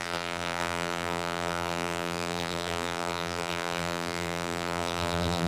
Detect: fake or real fake